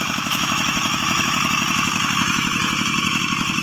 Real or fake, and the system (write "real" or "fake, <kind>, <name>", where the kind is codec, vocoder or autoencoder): fake, autoencoder, DAC-VAE